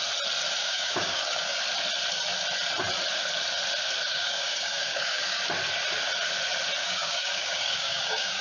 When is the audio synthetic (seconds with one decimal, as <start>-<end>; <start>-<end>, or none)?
0.6-1.6; 4.1-5.4; 6.8-8.4